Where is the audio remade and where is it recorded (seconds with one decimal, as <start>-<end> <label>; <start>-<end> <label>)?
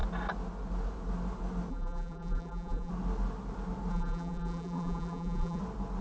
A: 0.0-1.7 recorded; 1.7-2.9 remade; 2.9-3.9 recorded; 3.9-5.6 remade; 5.6-6.0 recorded